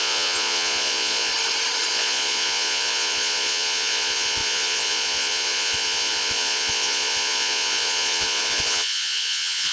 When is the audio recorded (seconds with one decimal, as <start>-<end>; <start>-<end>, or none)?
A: 1.3-1.9